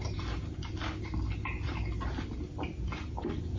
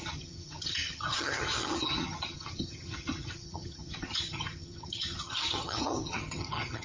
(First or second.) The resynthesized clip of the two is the second